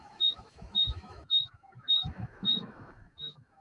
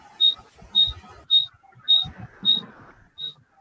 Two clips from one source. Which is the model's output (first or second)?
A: first